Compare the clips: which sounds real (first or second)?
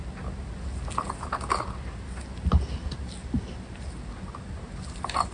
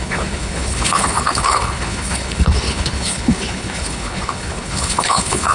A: first